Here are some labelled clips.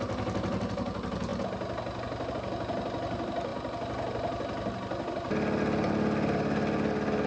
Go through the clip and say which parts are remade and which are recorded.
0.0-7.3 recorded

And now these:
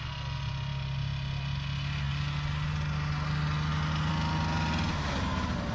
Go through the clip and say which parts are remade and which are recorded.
0.0-5.7 recorded